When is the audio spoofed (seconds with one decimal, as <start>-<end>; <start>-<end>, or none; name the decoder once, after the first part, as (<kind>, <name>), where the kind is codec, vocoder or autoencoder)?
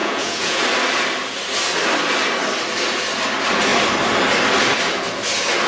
0.0-0.6 (vocoder, Vocos)